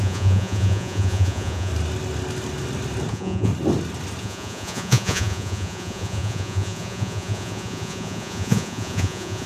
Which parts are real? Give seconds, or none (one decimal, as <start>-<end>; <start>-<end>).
1.7-3.1; 3.5-4.2